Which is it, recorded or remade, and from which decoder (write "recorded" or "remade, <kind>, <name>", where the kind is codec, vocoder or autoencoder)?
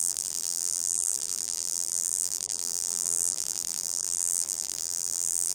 remade, vocoder, BigVGAN v2